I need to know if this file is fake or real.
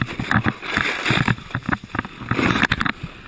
real